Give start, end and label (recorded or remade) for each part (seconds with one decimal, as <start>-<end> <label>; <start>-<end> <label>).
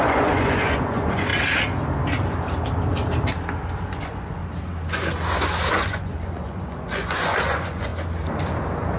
0.0-1.3 remade; 1.3-3.9 recorded; 3.9-4.4 remade; 4.4-5.7 recorded; 5.7-7.9 remade; 7.9-9.0 recorded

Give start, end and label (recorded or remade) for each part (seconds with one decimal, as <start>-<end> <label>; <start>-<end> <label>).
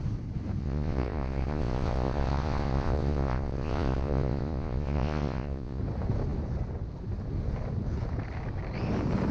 0.0-0.6 recorded; 0.6-5.8 remade; 5.8-9.3 recorded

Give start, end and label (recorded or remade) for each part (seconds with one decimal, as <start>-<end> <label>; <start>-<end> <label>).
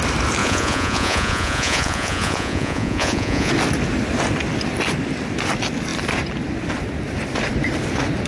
0.0-0.4 recorded; 0.4-3.5 remade; 3.5-8.3 recorded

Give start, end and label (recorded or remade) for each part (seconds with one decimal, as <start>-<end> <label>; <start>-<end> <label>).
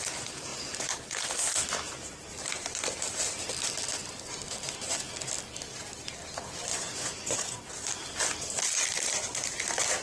0.0-6.7 recorded; 6.7-7.7 remade; 7.7-10.0 recorded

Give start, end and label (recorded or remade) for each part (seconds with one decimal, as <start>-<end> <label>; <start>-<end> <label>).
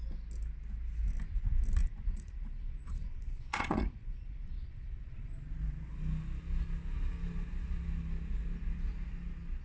0.0-1.8 recorded; 1.8-5.3 remade; 5.3-9.6 recorded